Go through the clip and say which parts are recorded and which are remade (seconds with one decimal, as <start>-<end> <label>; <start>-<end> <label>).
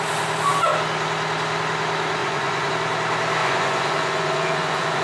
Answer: 0.0-2.2 recorded; 2.2-2.7 remade; 2.7-3.4 recorded; 3.4-5.0 remade